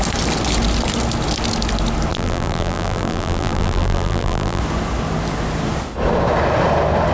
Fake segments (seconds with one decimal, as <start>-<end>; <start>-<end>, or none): 2.1-4.6